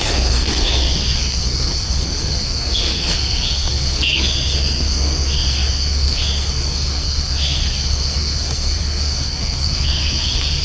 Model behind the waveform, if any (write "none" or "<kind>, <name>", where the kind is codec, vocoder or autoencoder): codec, SNAC